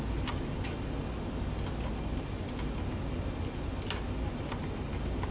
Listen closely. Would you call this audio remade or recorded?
recorded